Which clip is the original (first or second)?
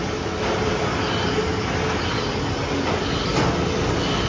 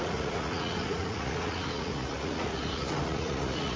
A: first